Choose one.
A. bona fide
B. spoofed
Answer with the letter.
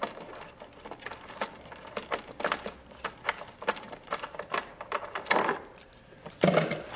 A